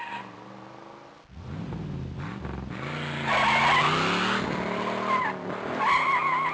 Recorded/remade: recorded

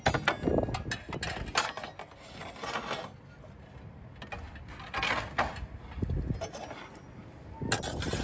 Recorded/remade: recorded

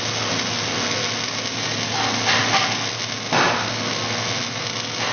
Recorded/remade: recorded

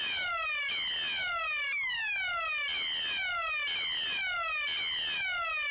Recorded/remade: recorded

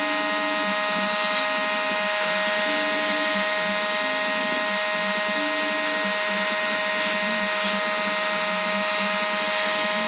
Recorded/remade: recorded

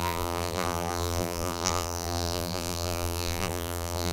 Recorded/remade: remade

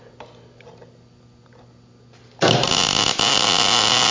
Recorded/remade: recorded